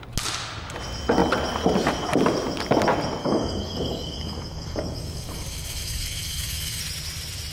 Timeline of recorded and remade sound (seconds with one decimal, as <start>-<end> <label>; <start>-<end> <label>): 0.0-3.2 recorded; 3.2-6.8 remade; 6.8-7.5 recorded